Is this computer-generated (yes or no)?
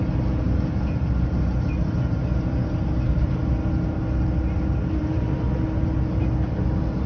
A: no